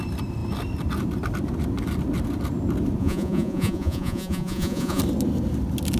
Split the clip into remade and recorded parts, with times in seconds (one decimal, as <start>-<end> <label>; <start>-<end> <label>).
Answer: 0.0-3.0 recorded; 3.0-5.0 remade; 5.0-6.0 recorded